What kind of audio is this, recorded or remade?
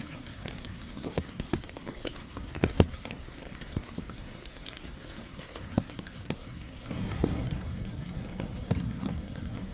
remade